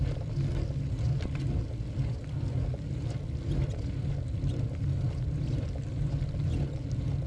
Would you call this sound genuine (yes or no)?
yes